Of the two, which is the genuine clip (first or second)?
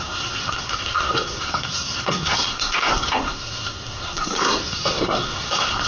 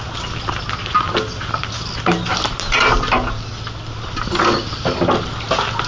second